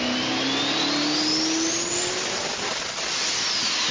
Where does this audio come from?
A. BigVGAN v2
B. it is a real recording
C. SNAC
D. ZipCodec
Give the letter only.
B